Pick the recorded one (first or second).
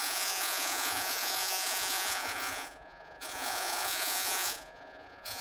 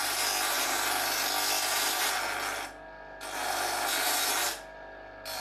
second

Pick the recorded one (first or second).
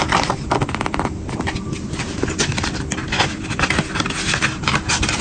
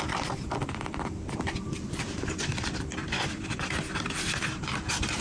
first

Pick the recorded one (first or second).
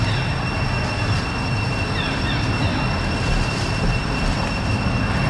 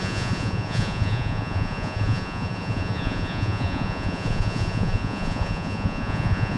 first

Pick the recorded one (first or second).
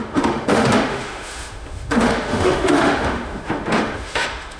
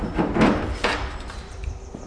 second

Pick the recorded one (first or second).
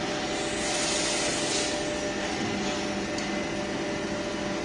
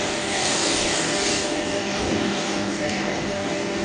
first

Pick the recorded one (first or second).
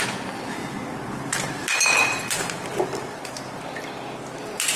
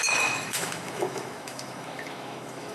first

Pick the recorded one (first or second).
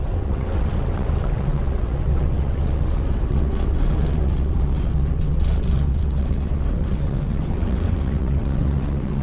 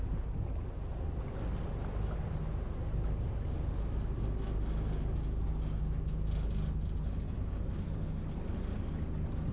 second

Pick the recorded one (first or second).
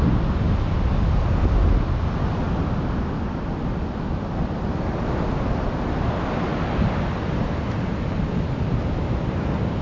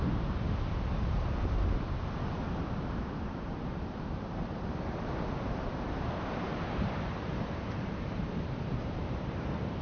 first